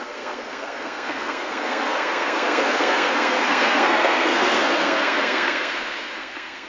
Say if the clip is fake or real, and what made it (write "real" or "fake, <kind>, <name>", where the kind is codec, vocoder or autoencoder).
fake, codec, SNAC